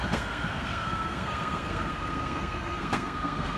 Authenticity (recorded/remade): remade